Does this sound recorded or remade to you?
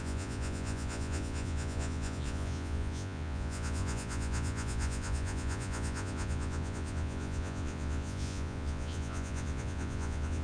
remade